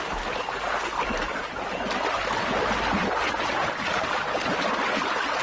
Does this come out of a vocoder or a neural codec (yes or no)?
no